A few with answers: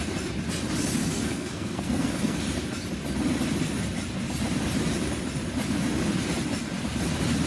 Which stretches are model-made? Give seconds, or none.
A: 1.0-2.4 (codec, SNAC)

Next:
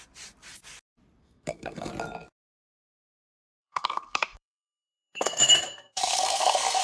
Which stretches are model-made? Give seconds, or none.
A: 1.2-1.9 (codec, SNAC); 2.6-6.8

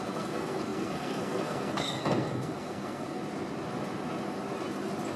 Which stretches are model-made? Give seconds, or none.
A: 0.0-3.2 (codec, SNAC)

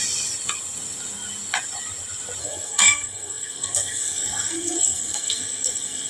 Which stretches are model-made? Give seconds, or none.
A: 2.4-6.1 (codec, SNAC)

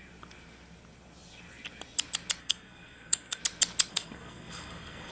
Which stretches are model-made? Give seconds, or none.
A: 2.4-3.4 (codec, SNAC); 3.9-5.1

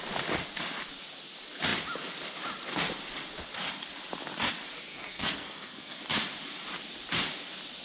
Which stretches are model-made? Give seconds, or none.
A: 4.9-6.0 (codec, SNAC)

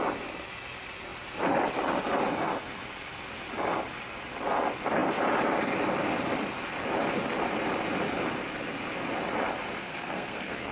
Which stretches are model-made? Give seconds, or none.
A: 9.8-10.7 (codec, SNAC)

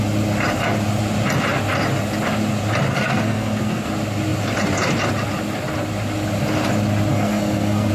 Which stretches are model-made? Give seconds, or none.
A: 2.9-3.9 (codec, SNAC); 7.1-7.9